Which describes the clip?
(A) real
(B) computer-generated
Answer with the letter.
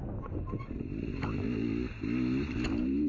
A